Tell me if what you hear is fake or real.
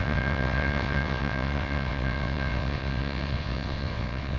fake